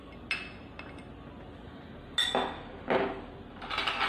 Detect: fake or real real